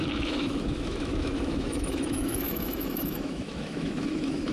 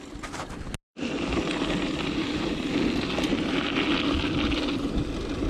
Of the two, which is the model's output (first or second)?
first